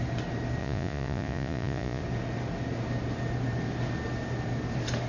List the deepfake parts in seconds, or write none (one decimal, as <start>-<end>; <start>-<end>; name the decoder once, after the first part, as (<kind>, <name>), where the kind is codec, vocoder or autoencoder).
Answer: 0.6-2.0 (vocoder, Vocos)